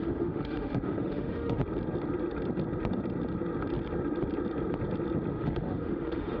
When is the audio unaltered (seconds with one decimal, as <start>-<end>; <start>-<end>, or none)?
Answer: 1.6-5.3